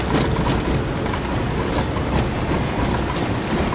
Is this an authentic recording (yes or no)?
yes